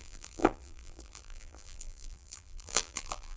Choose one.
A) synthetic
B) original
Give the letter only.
A